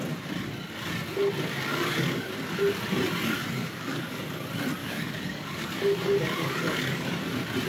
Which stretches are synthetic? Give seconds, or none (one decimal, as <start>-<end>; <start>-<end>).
1.7-2.3; 3.6-4.2; 4.8-7.2